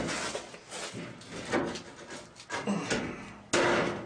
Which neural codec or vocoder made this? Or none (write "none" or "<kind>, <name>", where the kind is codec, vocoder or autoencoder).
none